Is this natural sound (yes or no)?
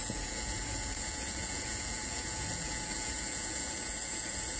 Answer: no